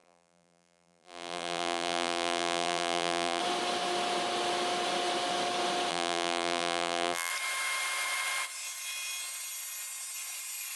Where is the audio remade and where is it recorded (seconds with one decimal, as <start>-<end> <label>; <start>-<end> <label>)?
0.0-3.4 remade; 3.4-5.9 recorded; 5.9-7.3 remade; 7.3-10.8 recorded